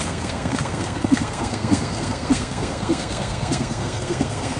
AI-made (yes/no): yes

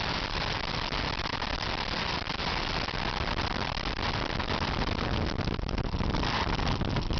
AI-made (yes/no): no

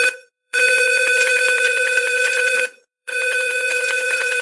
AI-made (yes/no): yes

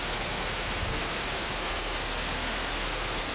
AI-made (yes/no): yes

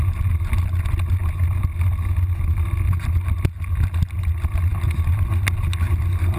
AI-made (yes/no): no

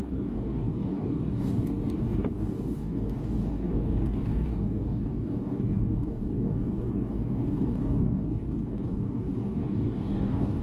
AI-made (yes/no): yes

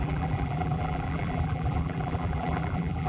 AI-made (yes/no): yes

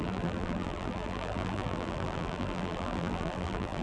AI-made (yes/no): yes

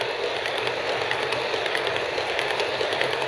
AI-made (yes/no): no